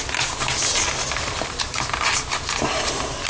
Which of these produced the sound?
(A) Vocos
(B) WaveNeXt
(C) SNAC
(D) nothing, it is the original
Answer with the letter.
D